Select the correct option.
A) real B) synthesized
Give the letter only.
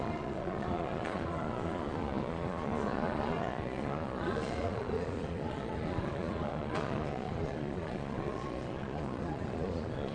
B